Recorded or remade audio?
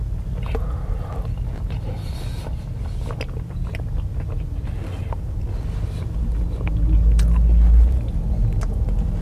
recorded